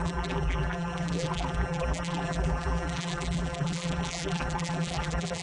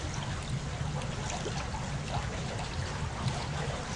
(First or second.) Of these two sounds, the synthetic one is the first